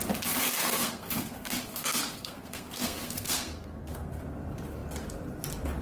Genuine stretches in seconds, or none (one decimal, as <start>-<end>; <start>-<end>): 0.0-0.6; 4.1-5.8